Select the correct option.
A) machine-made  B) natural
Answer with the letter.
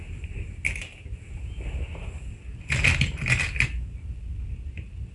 B